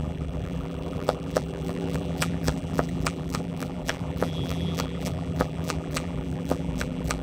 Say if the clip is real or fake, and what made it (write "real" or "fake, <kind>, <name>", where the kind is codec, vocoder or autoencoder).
fake, vocoder, BigVGAN v2